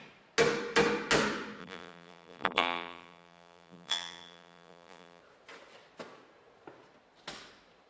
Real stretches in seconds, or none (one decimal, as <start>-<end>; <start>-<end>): 0.0-1.6; 5.2-7.9